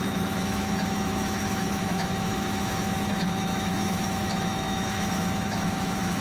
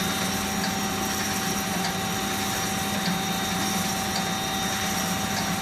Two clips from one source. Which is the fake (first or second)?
first